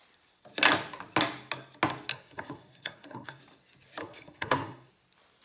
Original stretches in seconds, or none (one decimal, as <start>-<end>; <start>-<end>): 0.0-2.1; 3.4-4.0; 4.9-5.4